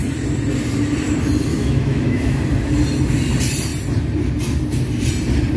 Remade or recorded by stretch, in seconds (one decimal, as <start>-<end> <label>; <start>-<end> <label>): 0.0-1.5 recorded; 1.5-2.4 remade; 2.4-5.6 recorded